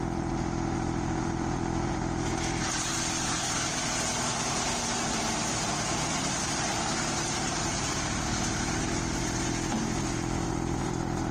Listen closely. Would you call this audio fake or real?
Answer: fake